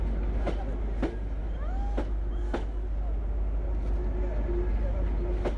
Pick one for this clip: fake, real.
real